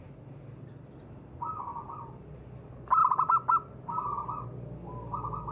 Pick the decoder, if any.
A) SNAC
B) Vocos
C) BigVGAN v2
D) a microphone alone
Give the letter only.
D